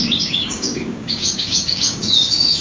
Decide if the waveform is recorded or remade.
remade